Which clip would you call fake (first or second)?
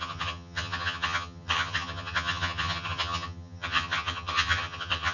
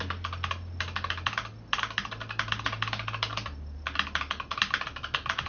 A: first